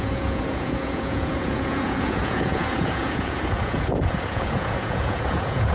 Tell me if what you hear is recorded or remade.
remade